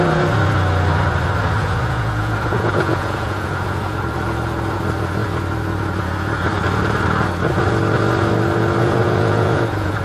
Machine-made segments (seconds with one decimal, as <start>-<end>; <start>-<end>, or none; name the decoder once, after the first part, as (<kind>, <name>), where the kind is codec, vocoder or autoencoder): 1.6-3.8 (vocoder, Vocos); 8.8-10.0